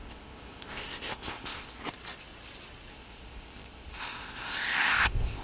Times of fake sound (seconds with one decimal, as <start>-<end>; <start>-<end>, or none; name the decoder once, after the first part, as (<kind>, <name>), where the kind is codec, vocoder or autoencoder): 0.0-1.8 (codec, ZipCodec); 2.9-5.4